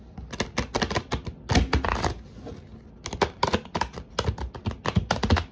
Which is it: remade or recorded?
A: recorded